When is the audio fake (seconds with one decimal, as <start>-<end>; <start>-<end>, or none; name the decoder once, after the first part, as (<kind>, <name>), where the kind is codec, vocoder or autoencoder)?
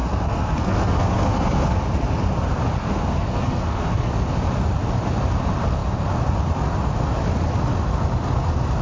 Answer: 0.0-1.8 (codec, SNAC); 2.8-4.1